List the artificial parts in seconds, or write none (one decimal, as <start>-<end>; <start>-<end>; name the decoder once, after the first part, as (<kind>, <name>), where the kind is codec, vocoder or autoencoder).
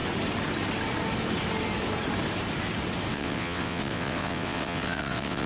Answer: 3.1-5.5 (vocoder, WaveNeXt)